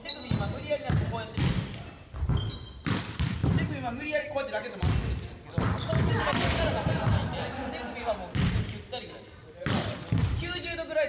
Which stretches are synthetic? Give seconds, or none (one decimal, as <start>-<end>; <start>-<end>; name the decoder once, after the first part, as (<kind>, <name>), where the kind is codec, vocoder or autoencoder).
0.0-3.4 (vocoder, BigVGAN v2); 8.6-11.1